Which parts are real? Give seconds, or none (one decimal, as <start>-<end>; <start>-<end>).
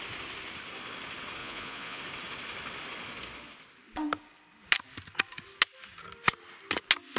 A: 0.0-1.4; 2.0-7.2